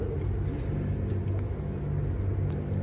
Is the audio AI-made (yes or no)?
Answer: no